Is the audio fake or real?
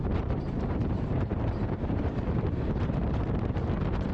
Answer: fake